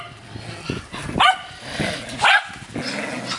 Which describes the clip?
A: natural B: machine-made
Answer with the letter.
A